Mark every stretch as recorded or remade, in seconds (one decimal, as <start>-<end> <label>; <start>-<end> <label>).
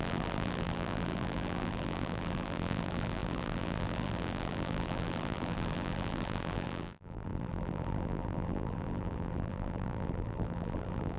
0.0-11.2 remade